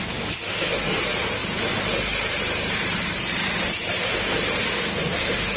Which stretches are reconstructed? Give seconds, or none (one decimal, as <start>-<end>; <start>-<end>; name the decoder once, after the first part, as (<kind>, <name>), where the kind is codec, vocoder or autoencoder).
1.4-4.8 (vocoder, BigVGAN v2)